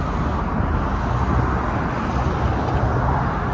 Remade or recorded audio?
recorded